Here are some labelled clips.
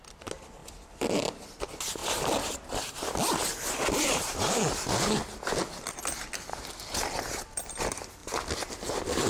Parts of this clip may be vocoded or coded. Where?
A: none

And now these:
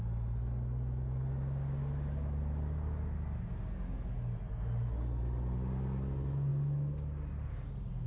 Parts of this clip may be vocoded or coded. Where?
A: none